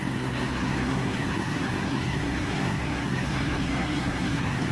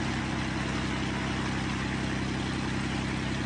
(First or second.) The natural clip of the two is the second